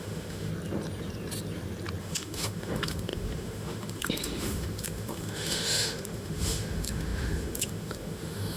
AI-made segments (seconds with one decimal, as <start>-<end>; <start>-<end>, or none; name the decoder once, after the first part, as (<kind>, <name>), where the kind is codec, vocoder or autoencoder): 0.0-0.5 (autoencoder, DAC-VAE); 2.0-8.6